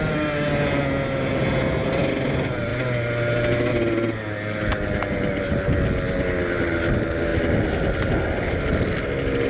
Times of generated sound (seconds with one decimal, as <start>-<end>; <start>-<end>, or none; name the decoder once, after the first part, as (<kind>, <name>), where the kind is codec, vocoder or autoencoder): none

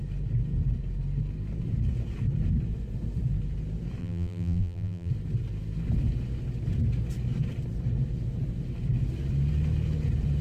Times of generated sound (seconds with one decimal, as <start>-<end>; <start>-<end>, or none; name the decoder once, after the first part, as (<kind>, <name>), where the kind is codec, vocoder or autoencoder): 4.0-5.1 (vocoder, BigVGAN v2)

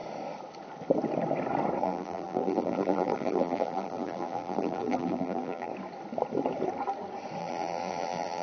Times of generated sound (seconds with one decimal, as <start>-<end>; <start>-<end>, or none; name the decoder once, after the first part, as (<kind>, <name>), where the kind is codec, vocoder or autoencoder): 1.8-5.7 (vocoder, BigVGAN v2); 7.4-8.4

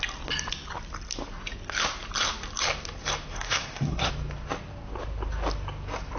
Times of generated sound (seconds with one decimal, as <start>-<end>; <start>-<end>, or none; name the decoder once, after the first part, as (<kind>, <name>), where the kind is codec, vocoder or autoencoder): 3.3-4.1 (codec, SNAC)